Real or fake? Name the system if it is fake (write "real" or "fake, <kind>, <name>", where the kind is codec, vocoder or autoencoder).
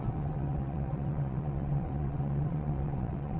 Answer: fake, vocoder, WaveNeXt